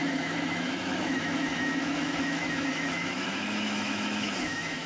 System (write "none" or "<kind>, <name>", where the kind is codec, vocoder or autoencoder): autoencoder, DAC-VAE